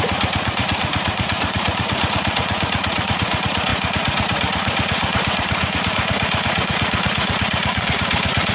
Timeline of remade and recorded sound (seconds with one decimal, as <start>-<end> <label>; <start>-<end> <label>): 0.0-8.5 remade